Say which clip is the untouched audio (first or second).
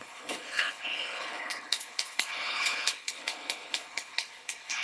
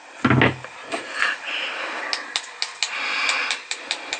second